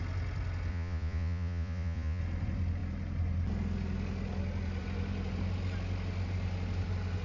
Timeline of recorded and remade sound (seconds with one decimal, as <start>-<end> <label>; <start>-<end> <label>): 0.0-0.7 recorded; 0.7-2.2 remade; 2.2-7.2 recorded